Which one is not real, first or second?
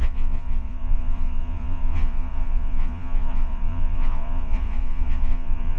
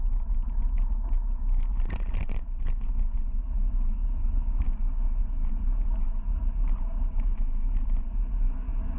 first